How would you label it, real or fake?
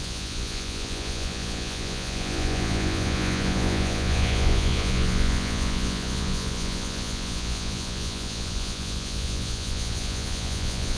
fake